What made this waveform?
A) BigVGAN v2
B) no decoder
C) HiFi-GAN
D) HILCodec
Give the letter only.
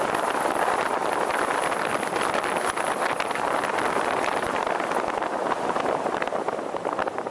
A